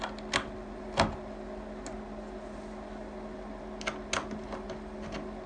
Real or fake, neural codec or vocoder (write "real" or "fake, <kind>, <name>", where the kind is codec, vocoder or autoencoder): real